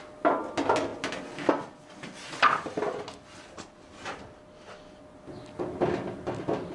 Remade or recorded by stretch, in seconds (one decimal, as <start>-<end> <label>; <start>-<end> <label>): 0.0-6.7 recorded